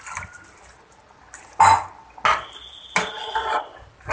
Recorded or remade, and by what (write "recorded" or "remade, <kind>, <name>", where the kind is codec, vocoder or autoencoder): recorded